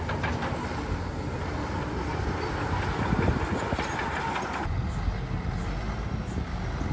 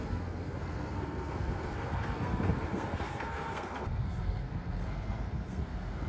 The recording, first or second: first